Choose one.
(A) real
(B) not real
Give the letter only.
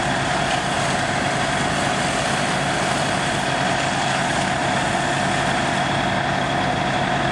A